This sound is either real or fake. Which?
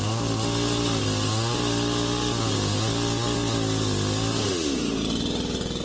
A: real